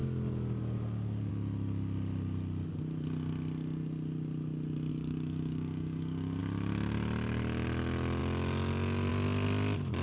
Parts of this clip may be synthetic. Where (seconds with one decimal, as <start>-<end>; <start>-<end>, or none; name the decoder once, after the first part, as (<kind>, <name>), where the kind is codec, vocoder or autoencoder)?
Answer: 4.9-6.4 (codec, DAC)